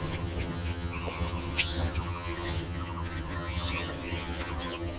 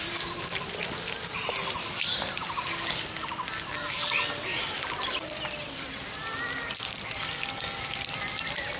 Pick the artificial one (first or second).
first